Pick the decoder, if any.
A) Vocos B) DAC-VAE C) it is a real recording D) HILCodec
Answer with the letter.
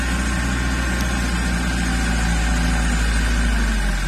C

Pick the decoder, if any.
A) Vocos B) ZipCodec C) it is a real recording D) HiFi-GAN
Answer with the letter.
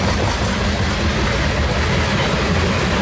C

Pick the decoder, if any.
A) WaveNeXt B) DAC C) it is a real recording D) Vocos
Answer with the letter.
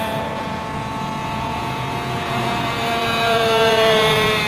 D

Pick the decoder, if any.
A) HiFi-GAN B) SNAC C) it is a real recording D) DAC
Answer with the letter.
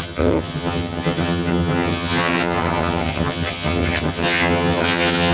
A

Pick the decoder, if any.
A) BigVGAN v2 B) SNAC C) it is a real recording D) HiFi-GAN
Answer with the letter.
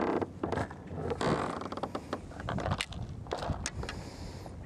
C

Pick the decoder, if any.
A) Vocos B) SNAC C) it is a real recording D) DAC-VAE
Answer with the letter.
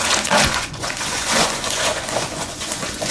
A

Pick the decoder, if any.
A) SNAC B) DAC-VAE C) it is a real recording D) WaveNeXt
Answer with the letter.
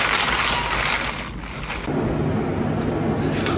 C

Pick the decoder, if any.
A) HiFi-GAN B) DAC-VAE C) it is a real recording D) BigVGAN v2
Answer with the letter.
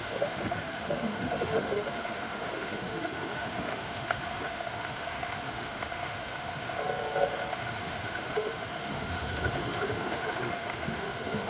B